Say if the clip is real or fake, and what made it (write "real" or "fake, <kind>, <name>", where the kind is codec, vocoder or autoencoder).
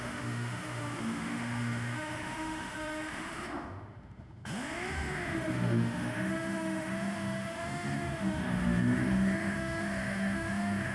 fake, autoencoder, DAC-VAE